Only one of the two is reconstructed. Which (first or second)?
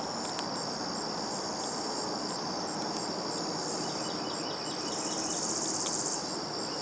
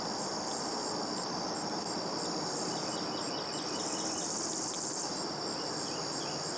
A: second